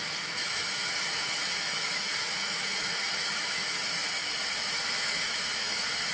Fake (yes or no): yes